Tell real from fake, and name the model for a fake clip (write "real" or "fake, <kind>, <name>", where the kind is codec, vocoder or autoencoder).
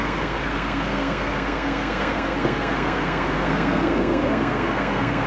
fake, codec, SNAC